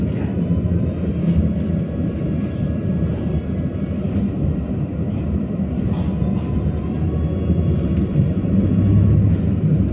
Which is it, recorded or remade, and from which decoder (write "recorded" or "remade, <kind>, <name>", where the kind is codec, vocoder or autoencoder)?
recorded